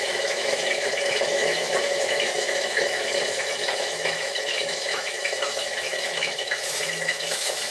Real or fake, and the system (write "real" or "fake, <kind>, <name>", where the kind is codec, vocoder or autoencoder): fake, autoencoder, DAC-VAE